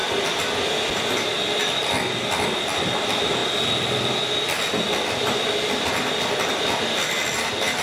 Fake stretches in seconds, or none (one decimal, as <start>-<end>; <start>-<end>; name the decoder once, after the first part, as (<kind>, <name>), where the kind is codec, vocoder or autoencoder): none